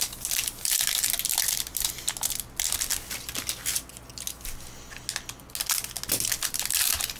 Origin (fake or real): real